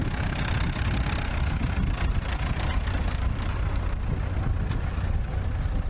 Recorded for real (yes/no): yes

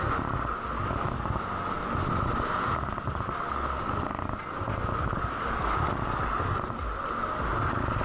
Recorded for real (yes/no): yes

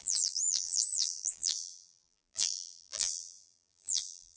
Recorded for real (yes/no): no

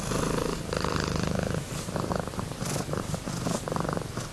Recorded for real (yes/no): no